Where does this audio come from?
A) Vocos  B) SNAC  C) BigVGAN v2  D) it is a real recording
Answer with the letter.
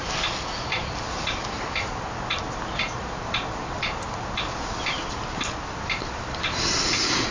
C